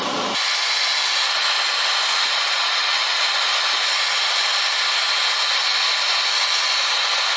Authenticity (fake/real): real